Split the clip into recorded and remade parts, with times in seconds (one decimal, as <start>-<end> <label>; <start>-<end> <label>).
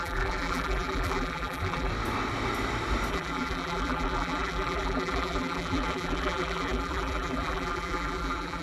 0.0-1.9 remade; 1.9-3.1 recorded; 3.1-8.6 remade